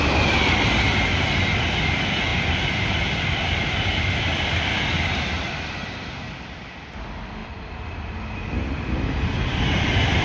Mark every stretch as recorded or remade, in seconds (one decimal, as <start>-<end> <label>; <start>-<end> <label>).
0.0-2.3 recorded; 2.3-5.9 remade; 5.9-7.4 recorded; 7.4-8.1 remade; 8.1-10.2 recorded